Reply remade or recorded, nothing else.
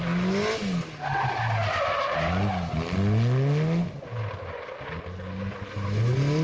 recorded